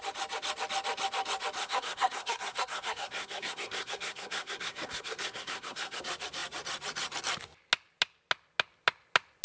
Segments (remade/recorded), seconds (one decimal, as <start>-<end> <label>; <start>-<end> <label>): 0.0-1.6 recorded; 1.6-6.0 remade; 6.0-9.4 recorded